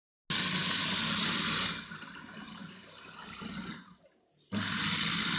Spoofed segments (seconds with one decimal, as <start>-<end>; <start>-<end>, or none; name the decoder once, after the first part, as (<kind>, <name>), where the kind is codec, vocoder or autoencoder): none